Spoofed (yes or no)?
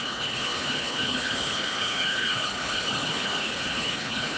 yes